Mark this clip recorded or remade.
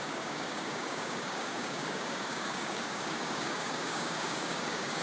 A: remade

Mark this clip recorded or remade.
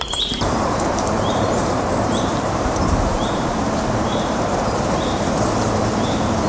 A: remade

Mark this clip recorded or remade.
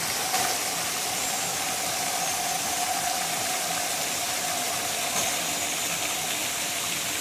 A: recorded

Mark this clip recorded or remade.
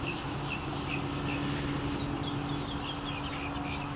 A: recorded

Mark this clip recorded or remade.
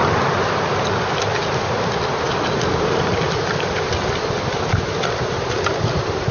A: recorded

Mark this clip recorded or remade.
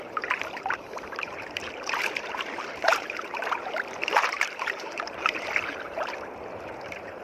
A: remade